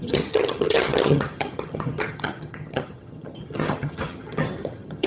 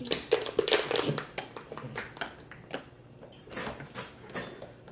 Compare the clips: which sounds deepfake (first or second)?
first